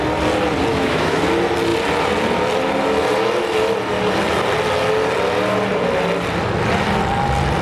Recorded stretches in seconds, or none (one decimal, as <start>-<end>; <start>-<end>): 0.0-0.7; 1.2-7.6